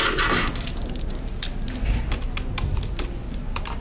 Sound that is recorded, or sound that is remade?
recorded